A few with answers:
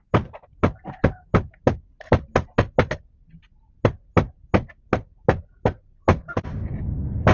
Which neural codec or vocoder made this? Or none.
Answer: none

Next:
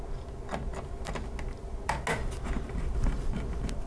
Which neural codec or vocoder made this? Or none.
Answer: none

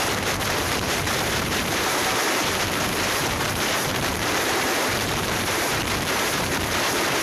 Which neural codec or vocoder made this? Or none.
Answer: vocoder, BigVGAN v2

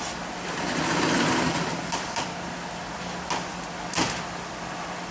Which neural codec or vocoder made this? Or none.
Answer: none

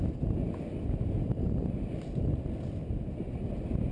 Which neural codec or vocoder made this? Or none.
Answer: none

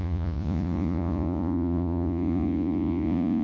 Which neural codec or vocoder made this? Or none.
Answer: vocoder, Vocos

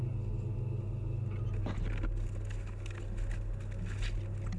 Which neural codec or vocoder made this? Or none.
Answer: none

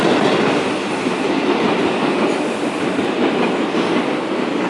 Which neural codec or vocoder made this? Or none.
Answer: none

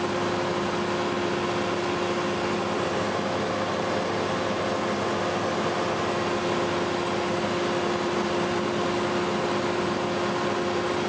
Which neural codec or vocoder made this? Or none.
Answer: none